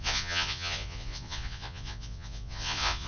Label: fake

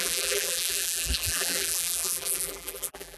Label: fake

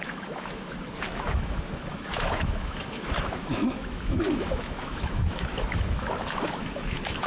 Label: fake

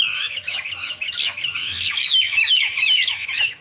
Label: fake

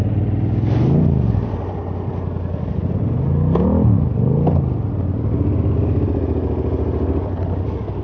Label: real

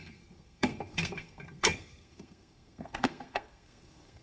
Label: fake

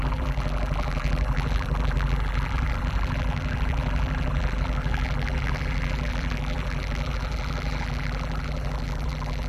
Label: fake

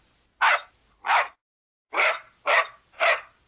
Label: real